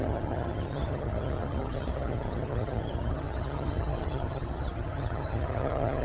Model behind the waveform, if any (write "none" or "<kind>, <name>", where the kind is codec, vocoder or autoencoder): vocoder, HiFi-GAN